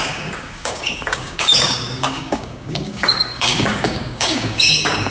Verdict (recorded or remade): remade